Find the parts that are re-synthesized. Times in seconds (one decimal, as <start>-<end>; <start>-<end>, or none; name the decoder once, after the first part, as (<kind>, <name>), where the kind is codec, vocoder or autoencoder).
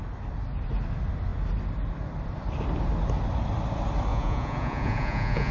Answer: 4.1-5.5 (vocoder, Vocos)